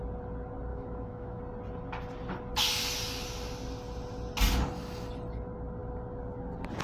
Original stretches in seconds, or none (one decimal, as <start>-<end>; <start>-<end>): 0.0-0.7; 1.4-6.8